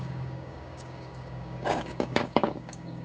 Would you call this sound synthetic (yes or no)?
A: yes